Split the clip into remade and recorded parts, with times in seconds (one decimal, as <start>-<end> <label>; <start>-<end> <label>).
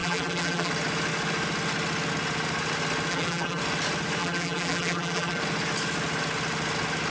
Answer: 0.0-0.7 remade; 0.7-3.1 recorded; 3.1-3.6 remade; 3.6-4.2 recorded; 4.2-5.4 remade; 5.4-7.1 recorded